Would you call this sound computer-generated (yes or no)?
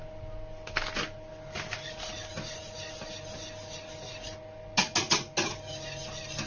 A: no